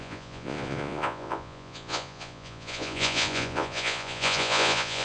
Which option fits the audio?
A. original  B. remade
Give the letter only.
B